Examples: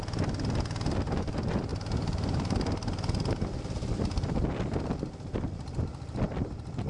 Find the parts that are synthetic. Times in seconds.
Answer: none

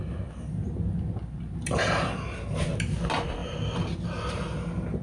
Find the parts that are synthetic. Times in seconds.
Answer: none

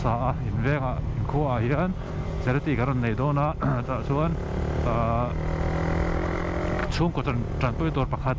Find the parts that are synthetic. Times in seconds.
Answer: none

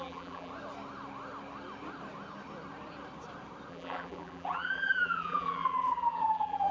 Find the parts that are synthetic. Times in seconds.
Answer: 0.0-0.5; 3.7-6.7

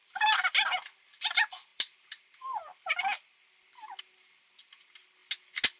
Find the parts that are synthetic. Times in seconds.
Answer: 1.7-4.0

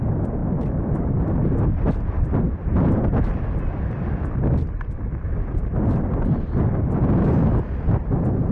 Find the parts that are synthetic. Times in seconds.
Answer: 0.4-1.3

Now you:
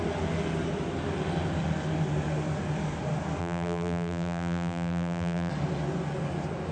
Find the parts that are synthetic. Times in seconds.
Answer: 3.4-5.5